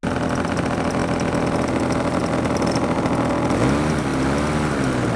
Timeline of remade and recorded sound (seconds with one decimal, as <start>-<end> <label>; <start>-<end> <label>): 0.0-5.2 recorded